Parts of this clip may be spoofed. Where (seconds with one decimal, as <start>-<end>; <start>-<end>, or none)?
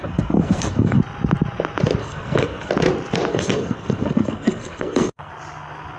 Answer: 0.0-1.0; 2.0-2.7; 3.3-5.3